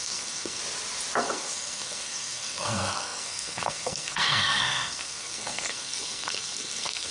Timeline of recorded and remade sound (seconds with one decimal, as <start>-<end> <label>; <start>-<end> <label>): 0.0-0.6 remade; 0.6-1.2 recorded; 1.2-7.1 remade